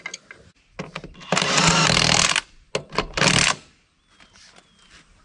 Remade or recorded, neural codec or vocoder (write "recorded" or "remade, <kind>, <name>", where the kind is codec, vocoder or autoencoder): recorded